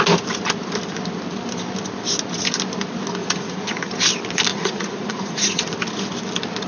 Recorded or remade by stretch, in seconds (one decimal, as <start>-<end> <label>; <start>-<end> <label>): 0.0-3.2 recorded; 3.2-3.9 remade; 3.9-4.5 recorded; 4.5-5.6 remade; 5.6-6.7 recorded